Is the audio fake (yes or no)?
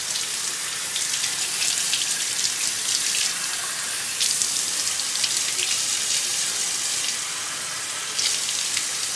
yes